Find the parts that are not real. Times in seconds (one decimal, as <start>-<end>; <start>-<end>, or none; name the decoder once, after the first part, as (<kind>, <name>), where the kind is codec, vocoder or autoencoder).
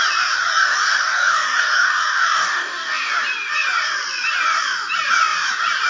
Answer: 0.5-3.1 (codec, DAC)